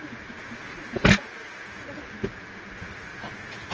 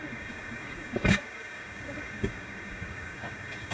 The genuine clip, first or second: first